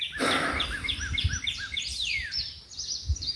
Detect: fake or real real